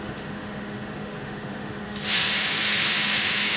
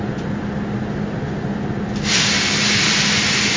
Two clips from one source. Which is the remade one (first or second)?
first